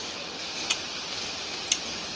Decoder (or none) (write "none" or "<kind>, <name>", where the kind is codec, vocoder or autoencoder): none